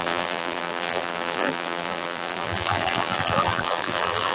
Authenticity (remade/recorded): remade